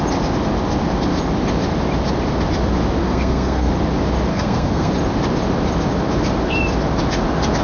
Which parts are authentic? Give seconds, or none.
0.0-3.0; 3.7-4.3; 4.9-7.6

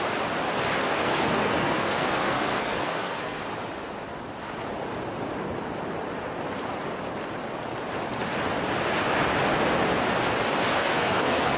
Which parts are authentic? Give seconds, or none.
0.0-0.8; 3.4-10.7

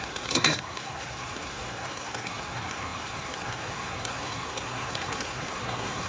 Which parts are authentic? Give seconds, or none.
none

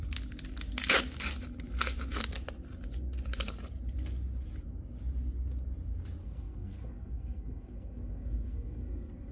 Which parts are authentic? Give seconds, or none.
0.0-6.2

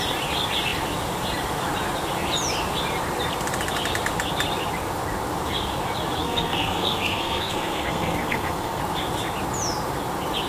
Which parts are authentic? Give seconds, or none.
0.0-6.2; 8.8-10.5